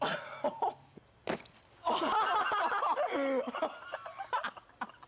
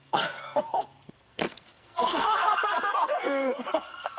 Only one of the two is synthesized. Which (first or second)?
second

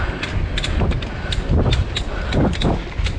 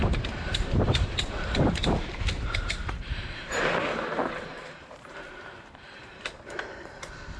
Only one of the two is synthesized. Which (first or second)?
second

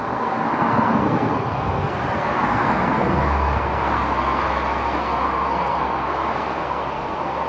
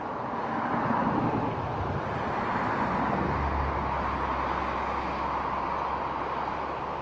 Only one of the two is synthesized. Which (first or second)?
first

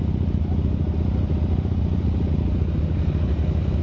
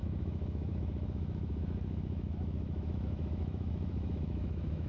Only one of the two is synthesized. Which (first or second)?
second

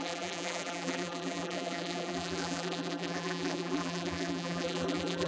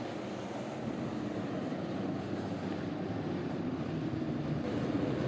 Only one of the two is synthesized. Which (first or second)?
first